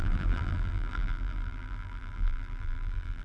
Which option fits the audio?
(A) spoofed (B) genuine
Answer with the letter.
A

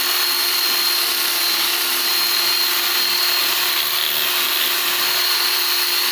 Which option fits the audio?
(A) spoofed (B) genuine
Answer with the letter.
B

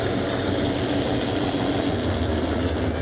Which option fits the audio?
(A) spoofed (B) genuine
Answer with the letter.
B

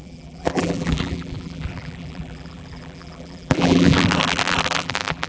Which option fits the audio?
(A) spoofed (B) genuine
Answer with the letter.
A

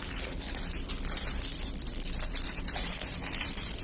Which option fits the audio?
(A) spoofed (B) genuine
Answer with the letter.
A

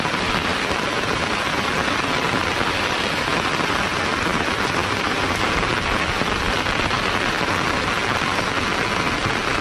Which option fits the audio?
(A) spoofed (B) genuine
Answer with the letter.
B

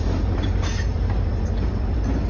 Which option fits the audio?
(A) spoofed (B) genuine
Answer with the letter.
A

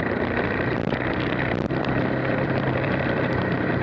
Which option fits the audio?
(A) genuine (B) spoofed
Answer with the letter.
B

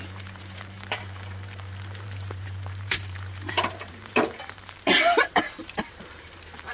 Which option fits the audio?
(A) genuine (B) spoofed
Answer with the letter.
B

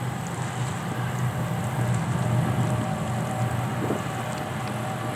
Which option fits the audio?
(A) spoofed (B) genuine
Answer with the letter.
B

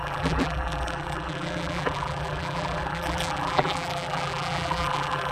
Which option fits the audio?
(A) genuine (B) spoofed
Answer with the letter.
B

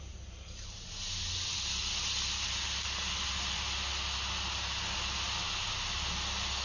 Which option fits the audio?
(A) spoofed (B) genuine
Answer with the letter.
B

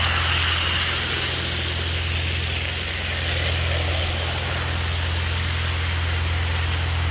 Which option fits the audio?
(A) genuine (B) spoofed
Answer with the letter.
A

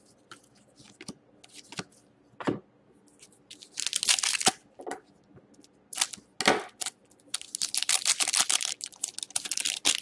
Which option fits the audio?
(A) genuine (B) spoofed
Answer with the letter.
A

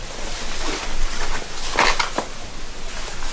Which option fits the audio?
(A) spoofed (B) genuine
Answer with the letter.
B